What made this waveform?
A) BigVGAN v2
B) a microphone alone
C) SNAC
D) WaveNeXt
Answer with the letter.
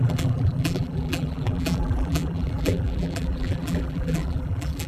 A